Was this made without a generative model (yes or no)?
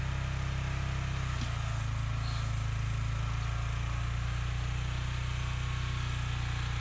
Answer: yes